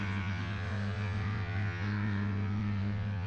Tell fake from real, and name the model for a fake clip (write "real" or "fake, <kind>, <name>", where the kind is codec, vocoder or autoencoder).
fake, vocoder, WaveNeXt